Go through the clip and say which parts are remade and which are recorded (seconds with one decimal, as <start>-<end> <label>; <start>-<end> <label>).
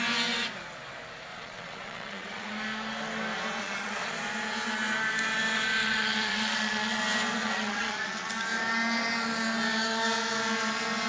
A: 0.0-1.3 recorded; 1.3-2.5 remade; 2.5-3.6 recorded; 3.6-4.1 remade; 4.1-5.8 recorded; 5.8-7.0 remade; 7.0-7.4 recorded; 7.4-8.3 remade; 8.3-11.1 recorded